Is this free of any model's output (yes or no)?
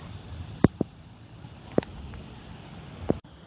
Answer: yes